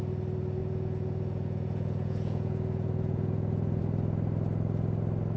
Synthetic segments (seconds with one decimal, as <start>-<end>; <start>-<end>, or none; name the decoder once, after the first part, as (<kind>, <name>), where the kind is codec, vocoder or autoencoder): 0.6-3.8 (vocoder, Vocos)